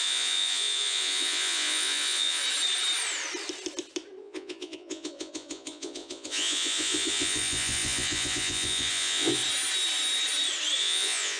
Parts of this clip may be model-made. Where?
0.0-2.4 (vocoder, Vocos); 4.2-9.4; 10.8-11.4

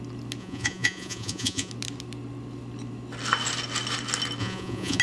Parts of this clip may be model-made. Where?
0.4-1.7 (vocoder, Vocos); 4.4-5.0